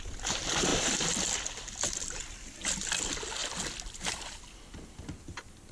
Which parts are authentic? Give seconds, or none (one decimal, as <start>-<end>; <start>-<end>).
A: 0.0-5.7